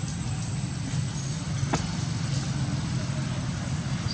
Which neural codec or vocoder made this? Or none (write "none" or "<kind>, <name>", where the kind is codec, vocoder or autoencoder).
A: none